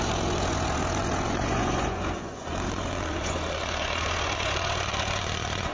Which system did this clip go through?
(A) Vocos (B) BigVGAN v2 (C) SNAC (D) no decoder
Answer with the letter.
A